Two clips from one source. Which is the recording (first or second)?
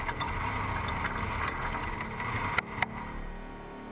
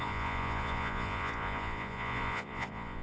first